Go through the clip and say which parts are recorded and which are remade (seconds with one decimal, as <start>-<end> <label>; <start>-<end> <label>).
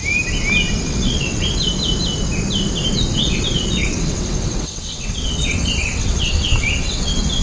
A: 0.0-0.9 recorded; 0.9-1.6 remade; 1.6-3.1 recorded; 3.1-7.4 remade